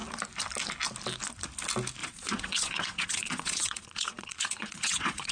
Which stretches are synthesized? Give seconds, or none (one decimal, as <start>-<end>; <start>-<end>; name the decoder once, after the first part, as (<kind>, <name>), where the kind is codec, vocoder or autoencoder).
2.0-5.3 (vocoder, Vocos)

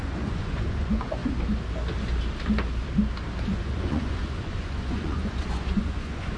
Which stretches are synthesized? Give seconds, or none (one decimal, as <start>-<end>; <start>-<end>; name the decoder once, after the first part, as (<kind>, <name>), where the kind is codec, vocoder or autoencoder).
0.0-1.2 (vocoder, Vocos); 3.6-6.4